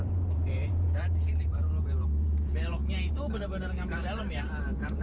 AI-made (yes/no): yes